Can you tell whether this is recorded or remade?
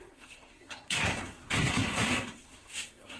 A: remade